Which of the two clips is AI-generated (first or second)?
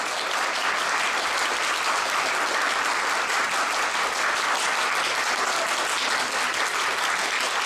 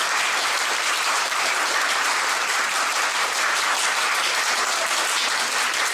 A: second